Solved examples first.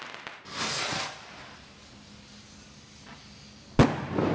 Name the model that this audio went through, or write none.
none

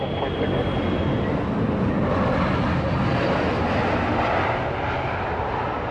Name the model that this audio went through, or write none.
none